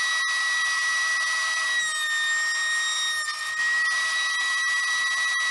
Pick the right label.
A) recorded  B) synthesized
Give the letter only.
A